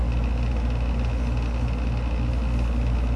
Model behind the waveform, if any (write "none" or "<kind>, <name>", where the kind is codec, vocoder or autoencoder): none